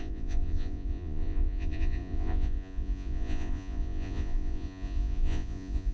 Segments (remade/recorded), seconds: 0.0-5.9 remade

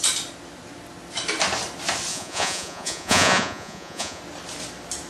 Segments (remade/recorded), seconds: 0.0-2.1 recorded; 2.1-4.2 remade; 4.2-5.1 recorded

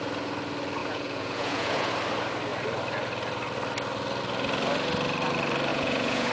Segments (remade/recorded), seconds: 0.0-0.8 recorded; 0.8-1.9 remade; 1.9-5.7 recorded; 5.7-6.3 remade

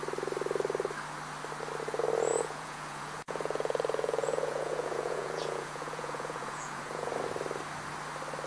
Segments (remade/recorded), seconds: 0.0-2.3 recorded; 2.3-7.1 remade; 7.1-8.5 recorded

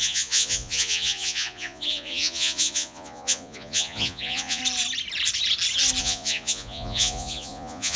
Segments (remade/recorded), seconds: 0.0-4.6 remade; 4.6-6.0 recorded; 6.0-8.0 remade

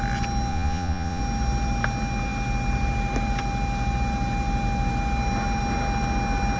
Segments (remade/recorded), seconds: 0.0-0.5 recorded; 0.5-1.2 remade; 1.2-6.6 recorded

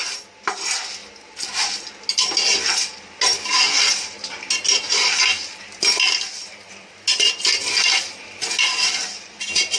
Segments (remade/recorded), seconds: 0.0-9.8 recorded

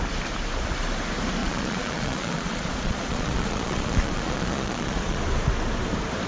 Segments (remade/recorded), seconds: 0.0-1.4 recorded; 1.4-5.2 remade; 5.2-6.3 recorded